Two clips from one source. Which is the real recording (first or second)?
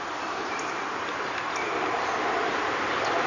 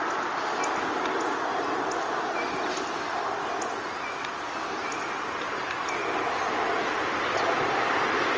second